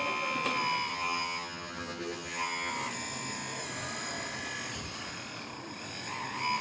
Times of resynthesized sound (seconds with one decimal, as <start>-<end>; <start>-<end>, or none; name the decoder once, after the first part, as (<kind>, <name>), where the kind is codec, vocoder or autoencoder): 0.9-2.7 (vocoder, HiFi-GAN)